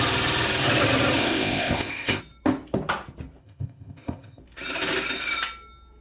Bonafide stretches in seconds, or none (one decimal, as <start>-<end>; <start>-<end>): 0.0-1.2; 2.2-3.4; 4.4-6.0